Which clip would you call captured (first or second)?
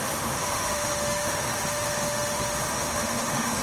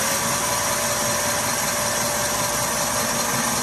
second